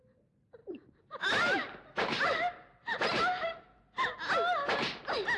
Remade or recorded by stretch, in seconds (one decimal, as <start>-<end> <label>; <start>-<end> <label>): 0.0-0.6 recorded; 0.6-3.8 remade; 3.8-5.4 recorded